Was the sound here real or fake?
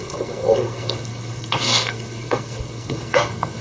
fake